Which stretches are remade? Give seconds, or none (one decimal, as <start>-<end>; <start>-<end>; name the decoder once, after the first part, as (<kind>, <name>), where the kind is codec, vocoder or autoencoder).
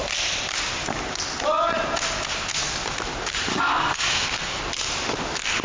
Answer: 3.5-4.6 (codec, SNAC)